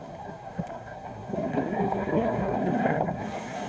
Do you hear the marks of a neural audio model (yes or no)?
yes